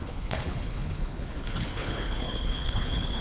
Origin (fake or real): fake